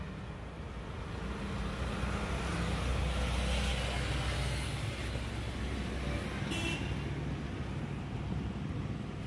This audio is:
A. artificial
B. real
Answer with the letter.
B